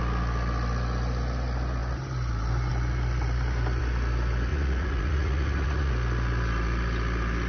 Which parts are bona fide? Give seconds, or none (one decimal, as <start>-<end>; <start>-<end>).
0.0-4.5; 5.9-7.5